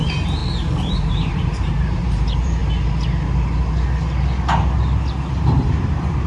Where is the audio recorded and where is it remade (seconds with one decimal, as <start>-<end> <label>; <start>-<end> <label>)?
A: 0.0-0.4 remade; 0.4-0.9 recorded; 0.9-2.6 remade; 2.6-5.3 recorded; 5.3-6.3 remade